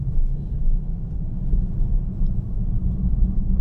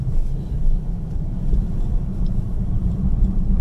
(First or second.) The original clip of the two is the first